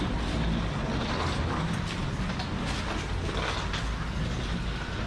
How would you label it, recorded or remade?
recorded